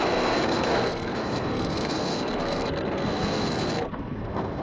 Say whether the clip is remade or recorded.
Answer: remade